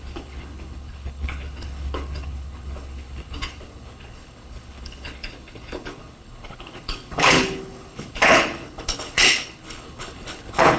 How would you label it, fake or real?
fake